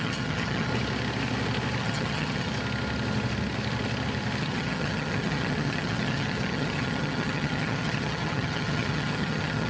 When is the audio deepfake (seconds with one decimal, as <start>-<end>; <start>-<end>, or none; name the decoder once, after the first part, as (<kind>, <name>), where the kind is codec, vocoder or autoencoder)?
0.0-0.7 (vocoder, HiFi-GAN); 1.8-2.5; 4.4-9.7